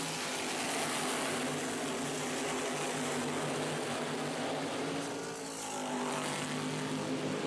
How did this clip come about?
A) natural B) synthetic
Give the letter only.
A